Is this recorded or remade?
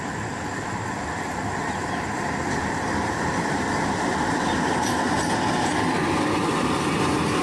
remade